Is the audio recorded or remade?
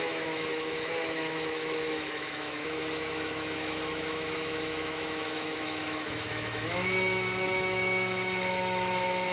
remade